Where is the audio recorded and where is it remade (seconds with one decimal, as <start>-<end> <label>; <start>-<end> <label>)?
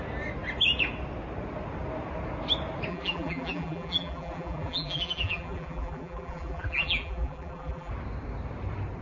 0.0-2.9 recorded; 2.9-7.9 remade; 7.9-9.0 recorded